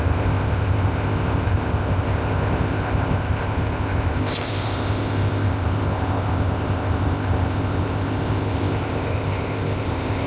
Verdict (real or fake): fake